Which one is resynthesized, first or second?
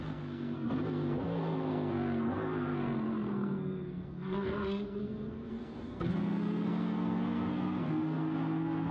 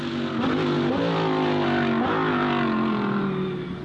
first